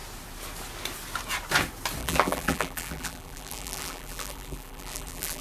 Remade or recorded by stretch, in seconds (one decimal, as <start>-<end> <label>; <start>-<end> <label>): 0.0-2.0 recorded; 2.0-5.4 remade